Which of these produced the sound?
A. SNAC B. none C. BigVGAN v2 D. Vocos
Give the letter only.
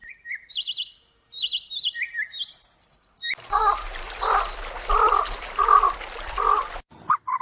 B